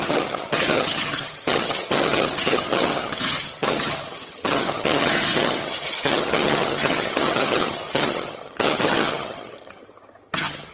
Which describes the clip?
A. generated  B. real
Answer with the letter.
A